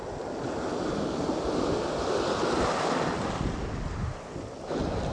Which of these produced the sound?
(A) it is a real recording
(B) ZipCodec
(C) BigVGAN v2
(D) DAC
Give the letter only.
A